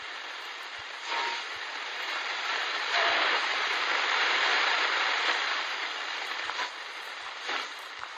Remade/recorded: remade